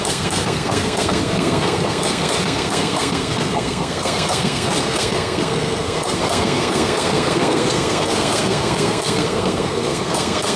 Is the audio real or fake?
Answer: fake